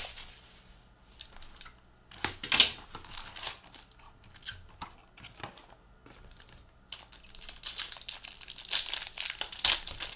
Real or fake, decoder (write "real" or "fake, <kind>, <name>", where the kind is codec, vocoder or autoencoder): real